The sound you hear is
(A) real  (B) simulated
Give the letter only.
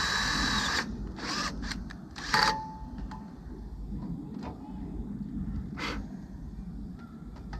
A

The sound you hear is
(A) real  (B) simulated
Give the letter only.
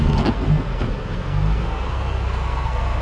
B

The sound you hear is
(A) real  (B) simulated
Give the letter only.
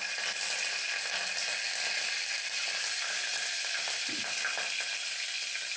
A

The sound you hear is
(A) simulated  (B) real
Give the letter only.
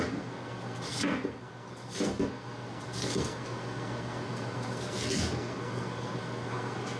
A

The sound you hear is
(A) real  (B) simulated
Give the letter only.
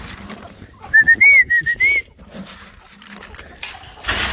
A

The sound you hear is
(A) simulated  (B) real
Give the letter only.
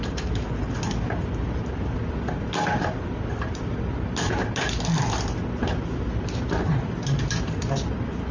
B